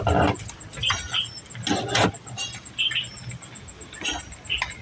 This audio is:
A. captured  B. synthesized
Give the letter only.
A